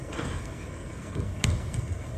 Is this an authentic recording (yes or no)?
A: no